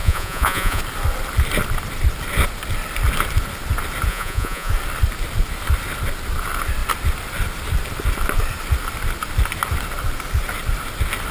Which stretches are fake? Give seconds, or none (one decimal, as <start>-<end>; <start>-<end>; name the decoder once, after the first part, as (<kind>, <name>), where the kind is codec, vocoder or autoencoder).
0.0-0.8 (vocoder, Vocos); 4.1-4.7